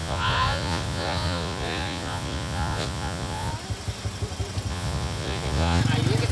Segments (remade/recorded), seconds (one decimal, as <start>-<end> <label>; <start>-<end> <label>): 0.0-3.5 remade; 3.5-4.7 recorded; 4.7-5.8 remade; 5.8-6.3 recorded